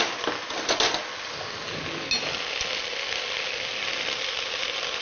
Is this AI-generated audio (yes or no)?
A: no